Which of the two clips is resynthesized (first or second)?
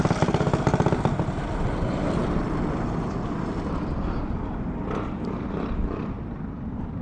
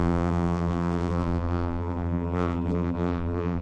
second